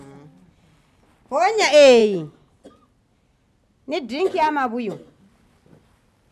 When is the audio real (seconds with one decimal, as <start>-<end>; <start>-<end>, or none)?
0.0-6.3